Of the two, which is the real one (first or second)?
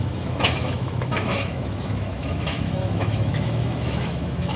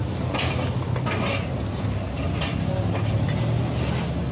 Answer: second